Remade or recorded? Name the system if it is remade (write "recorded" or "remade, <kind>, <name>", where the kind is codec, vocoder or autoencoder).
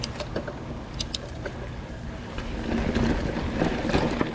recorded